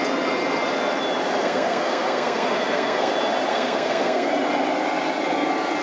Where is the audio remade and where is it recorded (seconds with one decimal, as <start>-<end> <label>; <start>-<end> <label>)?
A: 0.0-1.4 recorded; 1.4-3.1 remade; 3.1-3.5 recorded; 3.5-4.3 remade; 4.3-5.8 recorded